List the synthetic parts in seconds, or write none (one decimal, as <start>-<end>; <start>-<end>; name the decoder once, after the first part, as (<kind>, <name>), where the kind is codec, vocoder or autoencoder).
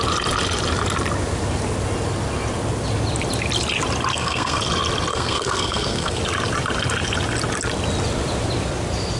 4.1-4.6 (codec, SNAC); 5.1-6.2